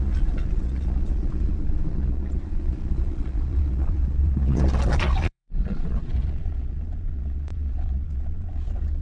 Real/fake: fake